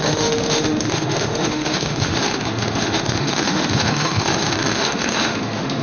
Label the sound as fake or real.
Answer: fake